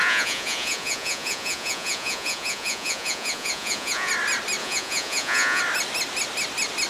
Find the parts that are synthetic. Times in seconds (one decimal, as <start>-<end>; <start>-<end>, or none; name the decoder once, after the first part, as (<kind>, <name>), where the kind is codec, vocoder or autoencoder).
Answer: 0.0-4.1 (vocoder, Vocos); 4.6-5.6